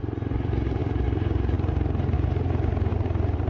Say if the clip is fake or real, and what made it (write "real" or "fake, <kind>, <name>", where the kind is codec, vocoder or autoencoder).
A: real